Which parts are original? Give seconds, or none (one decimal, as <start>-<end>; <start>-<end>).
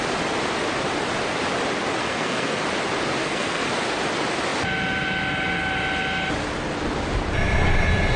0.0-2.0; 2.6-3.2; 3.7-8.2